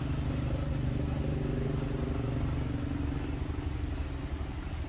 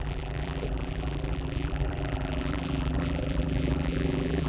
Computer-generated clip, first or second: second